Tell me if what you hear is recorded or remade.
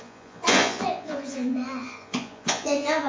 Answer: remade